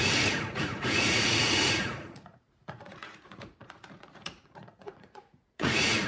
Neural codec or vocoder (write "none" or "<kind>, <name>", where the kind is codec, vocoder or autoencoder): vocoder, Vocos